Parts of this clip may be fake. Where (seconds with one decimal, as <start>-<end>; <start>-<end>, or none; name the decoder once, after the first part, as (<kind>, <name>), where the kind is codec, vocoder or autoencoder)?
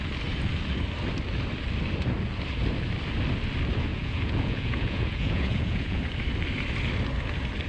3.9-6.0 (vocoder, Vocos)